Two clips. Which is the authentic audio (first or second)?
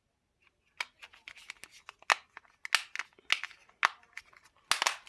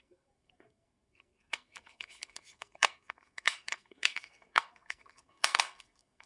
first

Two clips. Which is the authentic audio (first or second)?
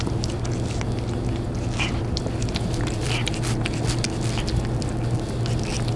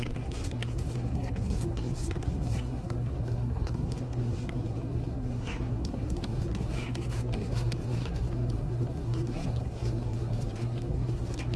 first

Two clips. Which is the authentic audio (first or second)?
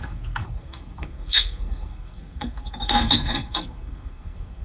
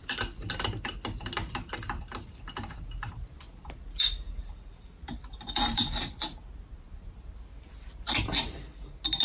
second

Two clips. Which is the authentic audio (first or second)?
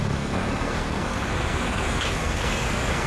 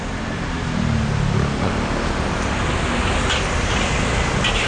second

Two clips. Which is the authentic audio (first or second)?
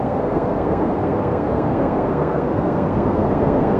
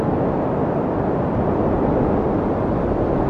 second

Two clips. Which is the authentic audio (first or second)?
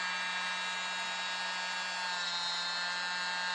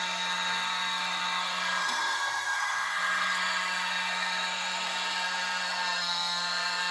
first